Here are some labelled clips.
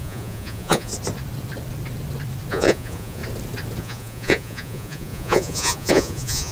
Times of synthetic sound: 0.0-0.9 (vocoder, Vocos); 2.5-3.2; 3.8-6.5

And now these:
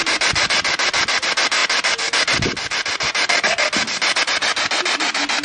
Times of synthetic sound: none

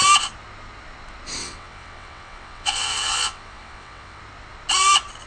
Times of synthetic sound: 1.4-4.2 (vocoder, WaveNeXt)